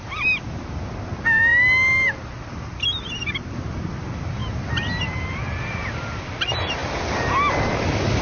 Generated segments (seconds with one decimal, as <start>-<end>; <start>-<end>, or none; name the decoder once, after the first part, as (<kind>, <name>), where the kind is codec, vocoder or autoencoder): 0.0-1.5 (vocoder, BigVGAN v2); 3.5-4.4; 5.0-8.2